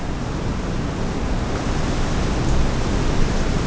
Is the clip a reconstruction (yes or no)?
no